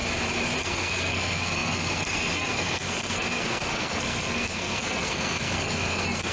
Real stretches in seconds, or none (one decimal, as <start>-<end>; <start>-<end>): 0.0-0.6

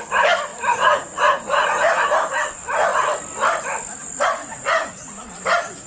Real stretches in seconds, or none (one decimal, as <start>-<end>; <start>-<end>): 0.0-0.5; 1.7-4.4; 5.0-5.9